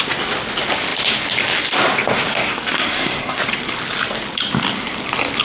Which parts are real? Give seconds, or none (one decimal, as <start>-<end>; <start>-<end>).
0.0-2.3; 3.4-5.4